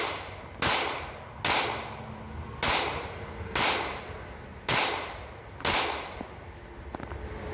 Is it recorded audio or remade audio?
recorded